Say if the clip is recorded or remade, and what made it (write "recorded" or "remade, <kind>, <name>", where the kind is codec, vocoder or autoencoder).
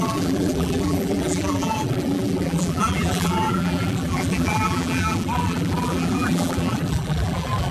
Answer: remade, vocoder, BigVGAN v2